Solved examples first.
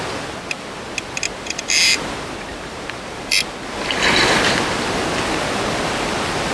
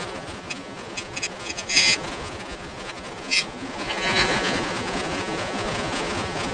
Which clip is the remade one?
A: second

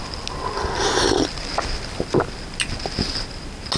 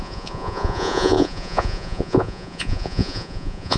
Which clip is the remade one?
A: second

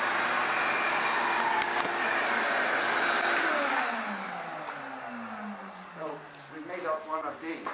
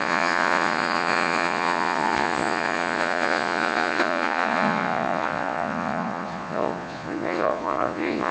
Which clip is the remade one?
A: second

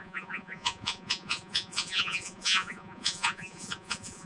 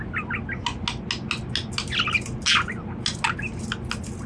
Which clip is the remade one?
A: first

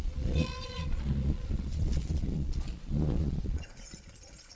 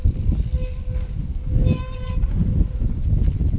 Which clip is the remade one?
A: first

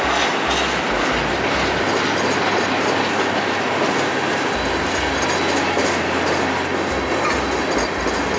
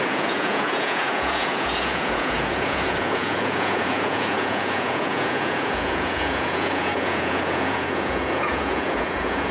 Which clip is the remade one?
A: second